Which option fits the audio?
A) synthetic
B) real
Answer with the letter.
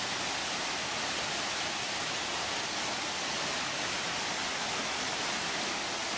B